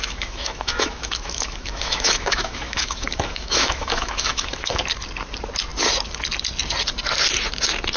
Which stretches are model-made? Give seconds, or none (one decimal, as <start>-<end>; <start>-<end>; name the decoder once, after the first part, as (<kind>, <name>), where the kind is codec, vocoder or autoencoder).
0.0-4.8 (autoencoder, DAC-VAE)